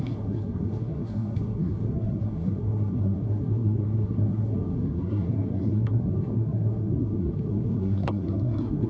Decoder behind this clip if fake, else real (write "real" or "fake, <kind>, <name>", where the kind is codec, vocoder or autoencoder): fake, codec, SNAC